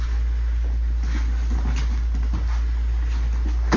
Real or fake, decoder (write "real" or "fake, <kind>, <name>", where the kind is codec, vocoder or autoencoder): real